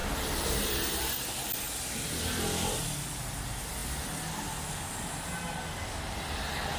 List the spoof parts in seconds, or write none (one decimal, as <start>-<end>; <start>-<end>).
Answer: none